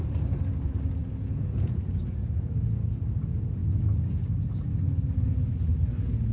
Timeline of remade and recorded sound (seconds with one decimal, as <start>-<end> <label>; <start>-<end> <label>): 0.0-1.0 recorded; 1.0-2.5 remade; 2.5-6.3 recorded